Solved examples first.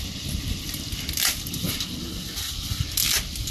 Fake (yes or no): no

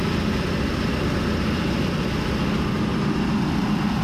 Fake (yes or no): no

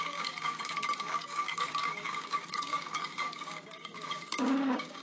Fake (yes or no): yes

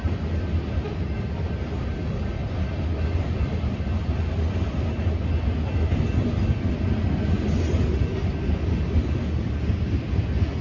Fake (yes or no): no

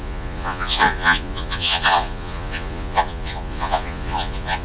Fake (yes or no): yes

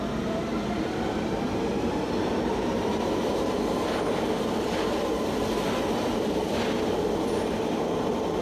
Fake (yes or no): no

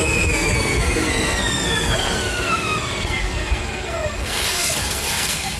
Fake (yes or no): yes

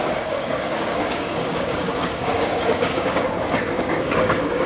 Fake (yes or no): yes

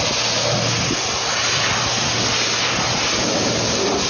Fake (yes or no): no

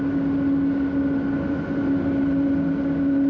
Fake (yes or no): no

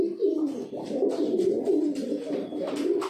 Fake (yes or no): no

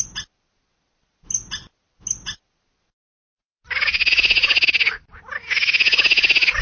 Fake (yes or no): no